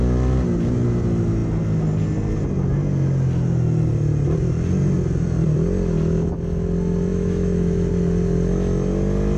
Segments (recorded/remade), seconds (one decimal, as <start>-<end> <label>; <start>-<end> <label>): 0.0-7.1 recorded; 7.1-7.9 remade; 7.9-9.4 recorded

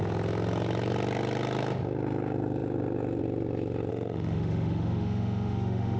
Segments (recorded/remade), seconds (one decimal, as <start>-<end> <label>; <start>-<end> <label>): 0.0-3.9 recorded; 3.9-6.0 remade

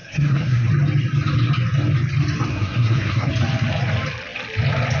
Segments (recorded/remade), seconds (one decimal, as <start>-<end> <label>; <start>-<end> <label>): 0.0-0.7 remade; 0.7-2.5 recorded; 2.5-3.3 remade; 3.3-5.0 recorded

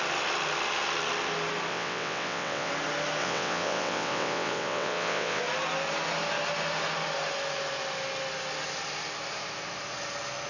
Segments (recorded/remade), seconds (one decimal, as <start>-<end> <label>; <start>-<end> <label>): 0.0-1.7 recorded; 1.7-2.7 remade; 2.7-3.2 recorded; 3.2-5.4 remade; 5.4-10.5 recorded

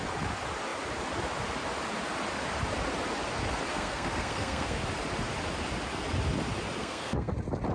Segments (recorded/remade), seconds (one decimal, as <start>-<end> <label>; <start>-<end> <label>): 0.0-3.7 recorded; 3.7-4.8 remade; 4.8-6.8 recorded; 6.8-7.3 remade; 7.3-7.7 recorded